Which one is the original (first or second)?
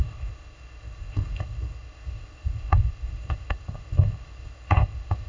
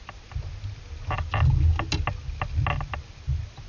second